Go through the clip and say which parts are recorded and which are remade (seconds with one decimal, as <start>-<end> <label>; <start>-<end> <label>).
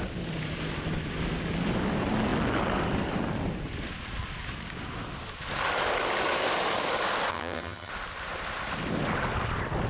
0.0-7.3 recorded; 7.3-7.9 remade; 7.9-9.9 recorded